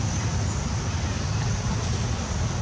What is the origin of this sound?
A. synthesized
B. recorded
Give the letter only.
B